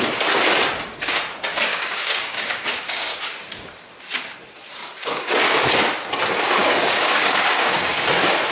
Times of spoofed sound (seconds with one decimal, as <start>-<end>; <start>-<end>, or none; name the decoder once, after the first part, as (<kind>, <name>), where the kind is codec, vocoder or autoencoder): 1.7-3.2 (codec, DAC); 4.8-5.5; 6.6-7.9